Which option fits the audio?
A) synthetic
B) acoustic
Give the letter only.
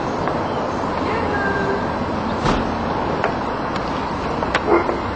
B